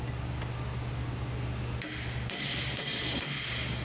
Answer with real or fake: real